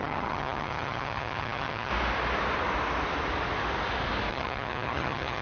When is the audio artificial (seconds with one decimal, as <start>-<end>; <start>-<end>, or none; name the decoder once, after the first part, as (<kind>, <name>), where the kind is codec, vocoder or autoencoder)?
0.0-1.9 (vocoder, HiFi-GAN); 4.3-5.4